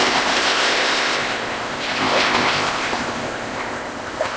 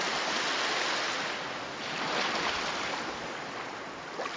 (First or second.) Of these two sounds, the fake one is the first